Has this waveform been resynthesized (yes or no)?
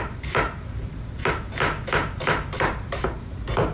yes